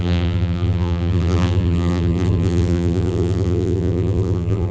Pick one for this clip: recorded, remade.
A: remade